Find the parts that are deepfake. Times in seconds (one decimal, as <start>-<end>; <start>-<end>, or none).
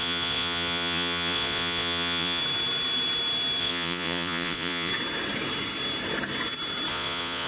0.0-2.4; 3.6-4.9; 6.9-7.5